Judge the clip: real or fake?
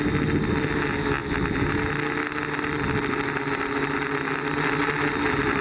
real